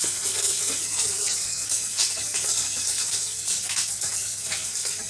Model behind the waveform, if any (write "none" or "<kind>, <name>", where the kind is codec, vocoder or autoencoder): codec, SNAC